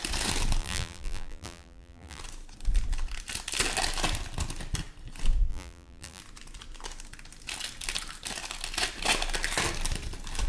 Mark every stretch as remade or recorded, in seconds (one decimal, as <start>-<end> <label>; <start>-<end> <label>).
0.0-0.6 recorded; 0.6-2.2 remade; 2.2-5.5 recorded; 5.5-6.2 remade; 6.2-10.5 recorded